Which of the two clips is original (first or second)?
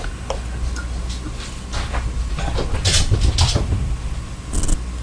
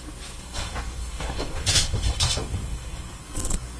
first